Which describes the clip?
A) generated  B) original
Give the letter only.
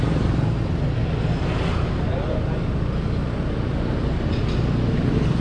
B